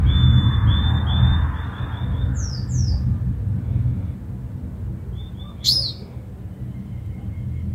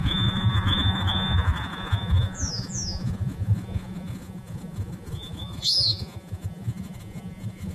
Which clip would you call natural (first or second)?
first